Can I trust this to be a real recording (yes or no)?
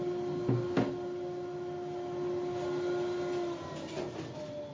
yes